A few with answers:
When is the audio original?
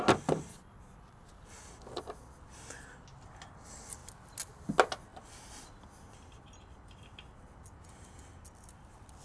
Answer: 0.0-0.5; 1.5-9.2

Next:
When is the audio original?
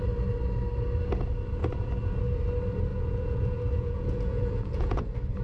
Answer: 0.0-2.9; 5.0-5.4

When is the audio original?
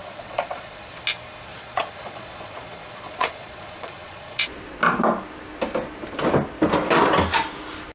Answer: 0.9-1.5; 4.8-7.9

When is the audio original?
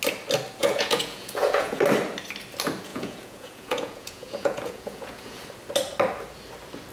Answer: 0.0-0.6; 1.8-2.9; 5.4-6.9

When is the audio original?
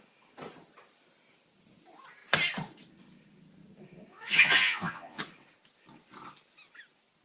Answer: 0.0-4.1; 5.2-7.2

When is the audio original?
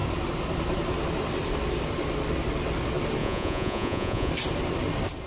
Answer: 0.0-3.2; 4.3-5.3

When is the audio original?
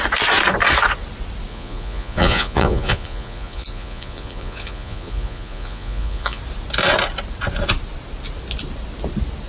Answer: 0.0-1.5; 6.4-9.5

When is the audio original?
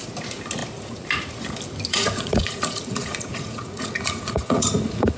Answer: 0.0-1.9